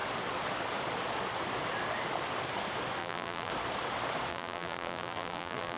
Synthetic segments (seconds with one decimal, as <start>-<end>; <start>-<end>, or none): 3.0-3.5; 4.3-5.8